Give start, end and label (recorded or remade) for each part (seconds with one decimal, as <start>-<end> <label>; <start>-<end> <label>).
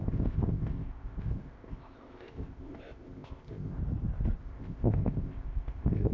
0.0-3.8 remade; 3.8-4.4 recorded; 4.4-6.1 remade